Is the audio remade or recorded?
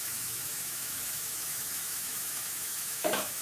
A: remade